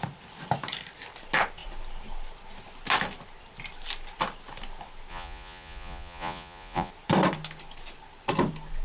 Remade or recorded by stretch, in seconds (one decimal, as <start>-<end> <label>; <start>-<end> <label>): 0.0-5.1 recorded; 5.1-6.9 remade; 6.9-8.8 recorded